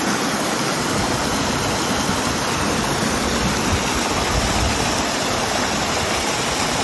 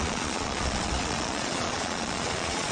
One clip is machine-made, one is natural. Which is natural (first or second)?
first